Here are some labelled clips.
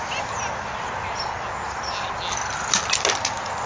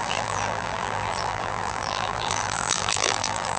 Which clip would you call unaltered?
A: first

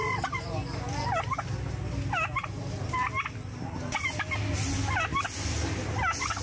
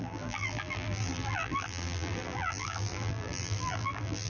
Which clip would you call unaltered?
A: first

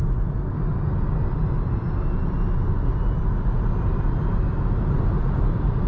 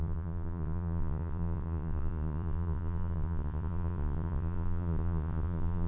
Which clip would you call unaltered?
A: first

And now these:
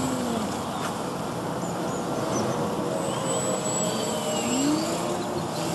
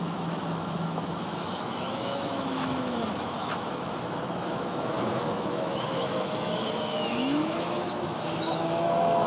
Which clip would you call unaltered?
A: first